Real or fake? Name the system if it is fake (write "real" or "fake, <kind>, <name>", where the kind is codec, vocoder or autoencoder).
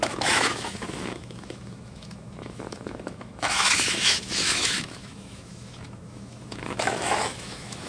fake, autoencoder, DAC-VAE